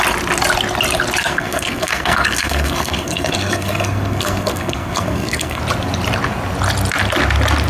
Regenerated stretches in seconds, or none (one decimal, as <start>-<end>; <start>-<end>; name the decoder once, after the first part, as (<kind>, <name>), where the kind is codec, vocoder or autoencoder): 1.2-5.6 (codec, SNAC)